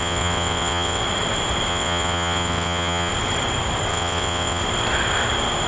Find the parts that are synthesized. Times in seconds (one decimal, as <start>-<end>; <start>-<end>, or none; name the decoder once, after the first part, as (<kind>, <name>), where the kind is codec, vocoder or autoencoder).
0.0-1.0 (vocoder, WaveNeXt); 1.7-3.1; 3.9-4.6